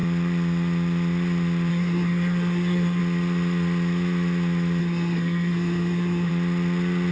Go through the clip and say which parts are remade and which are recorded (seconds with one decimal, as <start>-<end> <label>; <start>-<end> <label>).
0.0-1.7 recorded; 1.7-3.0 remade; 3.0-4.8 recorded; 4.8-6.3 remade; 6.3-7.1 recorded